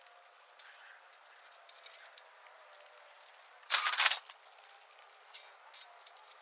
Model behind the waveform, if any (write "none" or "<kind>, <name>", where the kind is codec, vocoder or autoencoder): none